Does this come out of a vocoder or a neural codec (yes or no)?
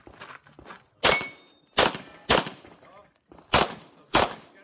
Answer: no